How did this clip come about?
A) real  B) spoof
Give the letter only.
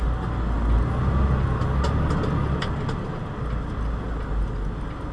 A